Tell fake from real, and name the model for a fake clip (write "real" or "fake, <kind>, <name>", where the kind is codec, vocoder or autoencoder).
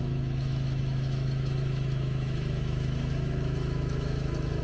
fake, autoencoder, DAC-VAE